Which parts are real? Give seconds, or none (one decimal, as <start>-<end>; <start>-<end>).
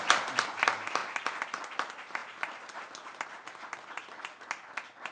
0.0-5.1